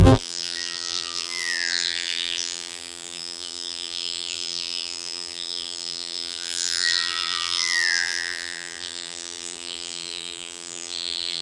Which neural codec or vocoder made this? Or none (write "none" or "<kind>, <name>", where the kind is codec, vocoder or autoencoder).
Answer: vocoder, BigVGAN v2